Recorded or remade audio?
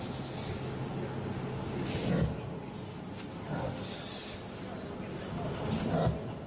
recorded